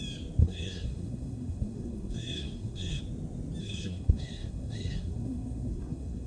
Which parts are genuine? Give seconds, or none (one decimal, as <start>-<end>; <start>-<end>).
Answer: 0.0-0.4; 3.0-3.6